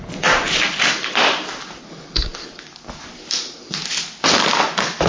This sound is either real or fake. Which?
real